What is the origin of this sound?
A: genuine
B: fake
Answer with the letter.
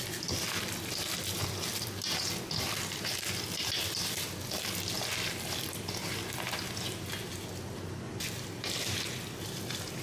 A